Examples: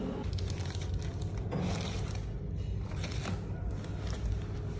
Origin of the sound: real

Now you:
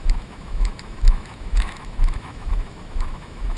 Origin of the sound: fake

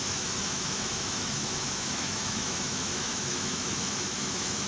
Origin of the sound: fake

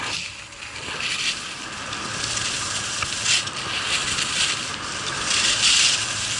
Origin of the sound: real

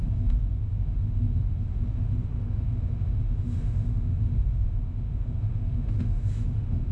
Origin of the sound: fake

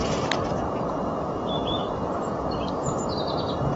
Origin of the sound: real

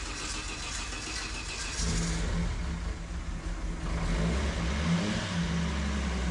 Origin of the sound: real